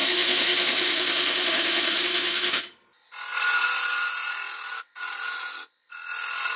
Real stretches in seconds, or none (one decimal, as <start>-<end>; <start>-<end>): 2.6-6.6